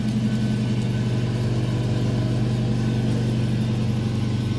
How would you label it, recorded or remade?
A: recorded